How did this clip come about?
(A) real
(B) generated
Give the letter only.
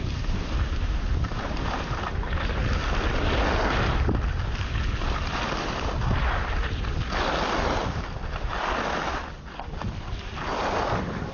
A